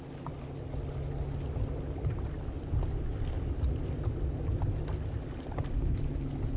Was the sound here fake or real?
real